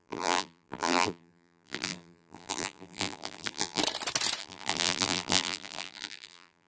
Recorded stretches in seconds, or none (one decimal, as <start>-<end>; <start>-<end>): 3.8-4.4